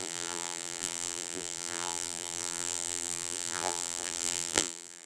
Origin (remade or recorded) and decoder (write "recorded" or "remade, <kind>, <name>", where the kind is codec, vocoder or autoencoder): remade, vocoder, BigVGAN v2